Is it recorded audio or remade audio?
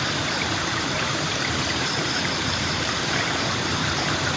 remade